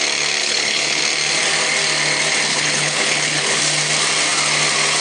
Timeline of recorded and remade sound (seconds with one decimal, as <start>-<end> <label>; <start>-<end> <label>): 0.0-0.4 recorded; 0.4-1.0 remade; 1.0-2.5 recorded; 2.5-3.6 remade; 3.6-5.0 recorded